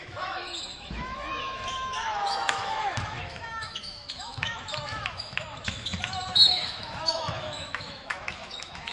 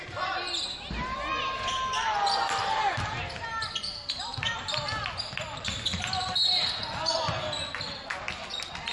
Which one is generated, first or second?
first